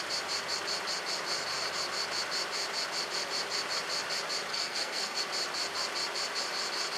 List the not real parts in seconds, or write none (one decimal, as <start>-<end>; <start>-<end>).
4.5-5.2